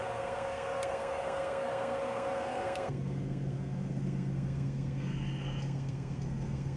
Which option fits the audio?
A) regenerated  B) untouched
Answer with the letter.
A